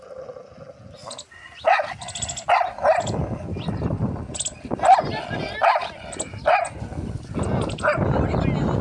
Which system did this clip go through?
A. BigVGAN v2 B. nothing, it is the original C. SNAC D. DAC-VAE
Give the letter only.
B